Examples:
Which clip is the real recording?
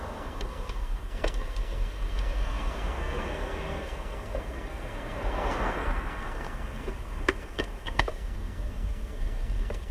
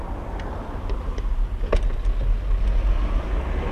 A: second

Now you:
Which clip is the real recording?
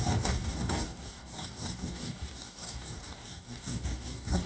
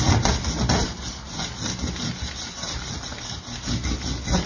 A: second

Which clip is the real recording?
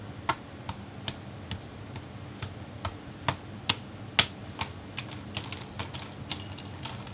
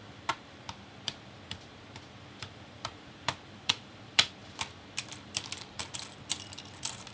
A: first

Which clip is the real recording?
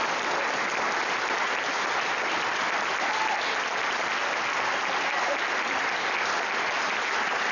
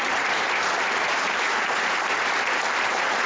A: first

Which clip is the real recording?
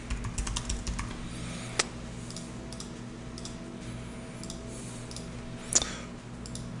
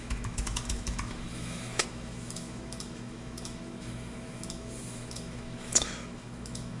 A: first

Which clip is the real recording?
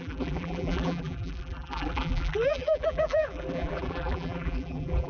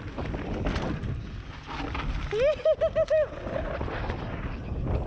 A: second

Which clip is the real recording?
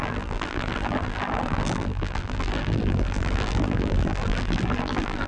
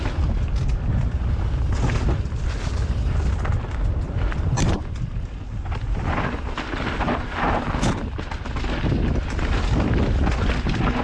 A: second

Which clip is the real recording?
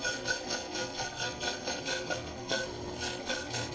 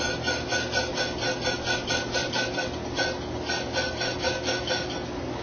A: second